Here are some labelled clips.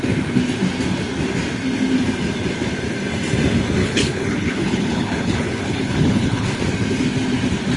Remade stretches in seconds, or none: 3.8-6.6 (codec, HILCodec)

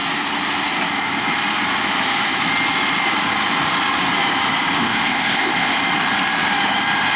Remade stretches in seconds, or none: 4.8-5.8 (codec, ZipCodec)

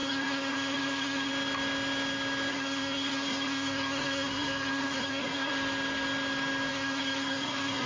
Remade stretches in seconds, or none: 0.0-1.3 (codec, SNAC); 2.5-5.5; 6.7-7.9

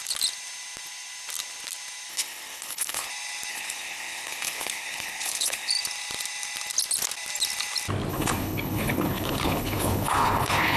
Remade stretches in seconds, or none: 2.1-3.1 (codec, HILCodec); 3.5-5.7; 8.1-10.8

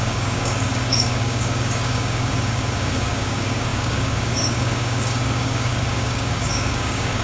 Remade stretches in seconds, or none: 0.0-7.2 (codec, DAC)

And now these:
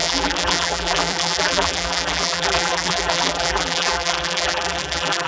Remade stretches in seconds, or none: 0.0-5.3 (vocoder, BigVGAN v2)

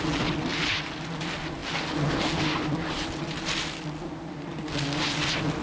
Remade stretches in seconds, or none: none

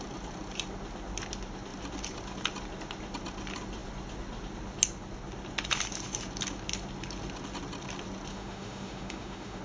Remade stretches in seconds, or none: 8.3-9.6 (autoencoder, DAC-VAE)